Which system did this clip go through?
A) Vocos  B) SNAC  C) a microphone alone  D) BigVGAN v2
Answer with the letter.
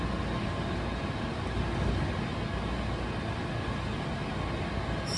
C